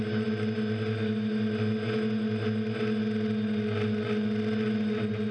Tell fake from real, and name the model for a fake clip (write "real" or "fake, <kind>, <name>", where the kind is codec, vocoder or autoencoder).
real